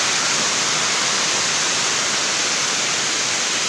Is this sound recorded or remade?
recorded